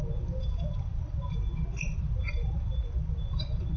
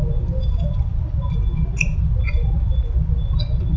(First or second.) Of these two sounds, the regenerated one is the first